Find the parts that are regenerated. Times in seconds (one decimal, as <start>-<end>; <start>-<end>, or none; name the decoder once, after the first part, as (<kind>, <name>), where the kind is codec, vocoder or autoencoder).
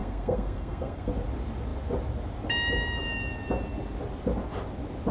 0.0-1.1 (codec, SNAC)